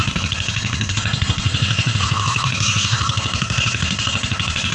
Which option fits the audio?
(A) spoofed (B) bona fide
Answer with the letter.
A